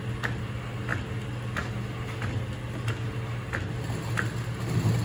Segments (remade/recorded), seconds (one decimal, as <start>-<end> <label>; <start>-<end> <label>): 0.0-5.0 recorded